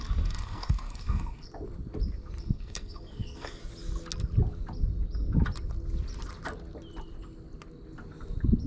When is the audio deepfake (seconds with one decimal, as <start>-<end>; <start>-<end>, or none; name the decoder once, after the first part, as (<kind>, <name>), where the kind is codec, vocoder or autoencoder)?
0.0-1.5 (codec, SNAC); 2.4-3.6

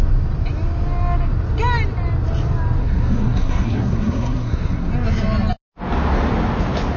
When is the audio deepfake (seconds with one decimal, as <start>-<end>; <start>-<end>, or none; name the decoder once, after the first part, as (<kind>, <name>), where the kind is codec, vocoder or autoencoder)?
2.8-4.9 (codec, SNAC)

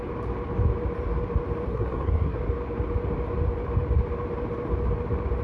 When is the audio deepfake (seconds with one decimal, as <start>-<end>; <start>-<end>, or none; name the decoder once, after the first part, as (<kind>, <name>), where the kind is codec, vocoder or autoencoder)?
1.7-2.4 (codec, SNAC)